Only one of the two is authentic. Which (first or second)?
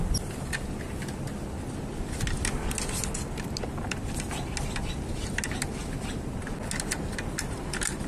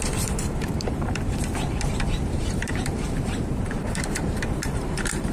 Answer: first